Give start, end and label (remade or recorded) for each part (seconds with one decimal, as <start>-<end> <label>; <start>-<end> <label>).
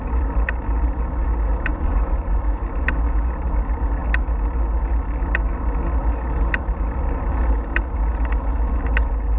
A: 0.0-1.7 recorded; 1.7-2.6 remade; 2.6-9.4 recorded